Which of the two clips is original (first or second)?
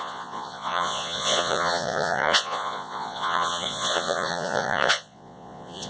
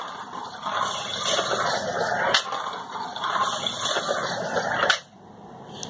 second